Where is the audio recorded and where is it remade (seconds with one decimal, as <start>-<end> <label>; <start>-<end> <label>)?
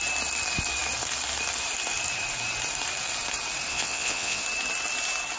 0.0-3.7 recorded; 3.7-4.4 remade; 4.4-5.4 recorded